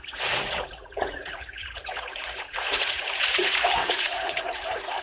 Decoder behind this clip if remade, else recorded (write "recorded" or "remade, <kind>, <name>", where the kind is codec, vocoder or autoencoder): remade, vocoder, Vocos